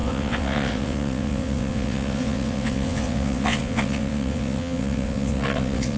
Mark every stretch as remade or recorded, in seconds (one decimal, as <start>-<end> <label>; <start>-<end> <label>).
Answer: 0.0-6.0 remade